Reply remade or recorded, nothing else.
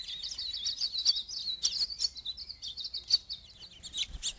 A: recorded